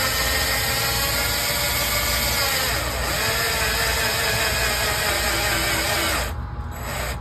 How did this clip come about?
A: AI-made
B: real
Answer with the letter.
B